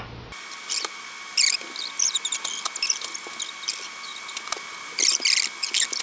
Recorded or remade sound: recorded